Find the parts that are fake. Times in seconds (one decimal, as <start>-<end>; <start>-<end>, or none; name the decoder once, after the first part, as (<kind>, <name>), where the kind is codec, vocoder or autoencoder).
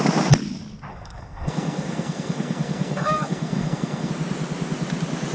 0.9-4.1 (codec, SNAC)